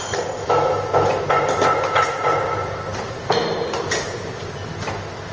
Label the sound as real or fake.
real